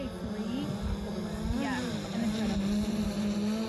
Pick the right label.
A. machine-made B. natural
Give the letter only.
B